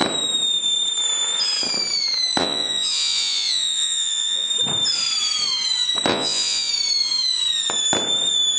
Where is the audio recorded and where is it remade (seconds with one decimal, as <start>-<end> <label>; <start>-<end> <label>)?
0.0-2.4 recorded; 2.4-4.5 remade; 4.5-6.1 recorded; 6.1-6.7 remade; 6.7-8.6 recorded